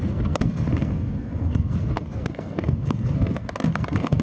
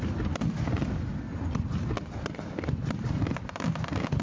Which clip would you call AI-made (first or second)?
first